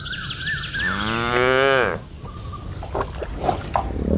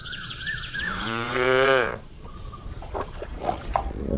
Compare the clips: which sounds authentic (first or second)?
first